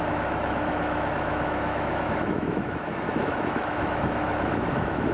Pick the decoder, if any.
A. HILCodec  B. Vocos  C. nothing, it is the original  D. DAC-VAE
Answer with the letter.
D